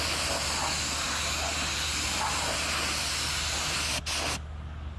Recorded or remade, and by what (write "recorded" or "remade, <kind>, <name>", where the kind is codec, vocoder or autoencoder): recorded